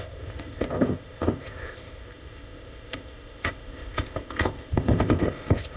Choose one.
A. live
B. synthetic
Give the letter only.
B